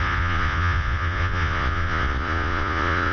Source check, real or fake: fake